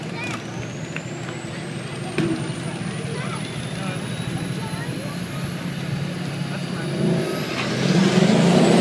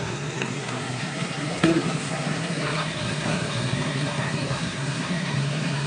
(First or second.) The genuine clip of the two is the first